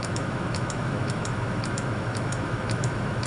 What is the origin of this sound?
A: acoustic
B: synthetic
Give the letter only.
B